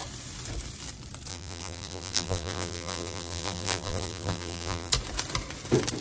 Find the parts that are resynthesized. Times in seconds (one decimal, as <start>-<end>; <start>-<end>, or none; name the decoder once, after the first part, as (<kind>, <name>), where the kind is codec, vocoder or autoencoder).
1.3-4.9 (vocoder, BigVGAN v2)